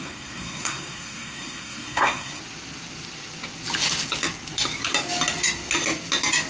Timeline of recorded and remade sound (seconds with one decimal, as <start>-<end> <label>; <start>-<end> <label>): 0.0-2.4 remade; 2.4-6.5 recorded